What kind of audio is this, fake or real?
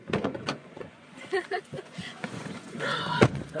fake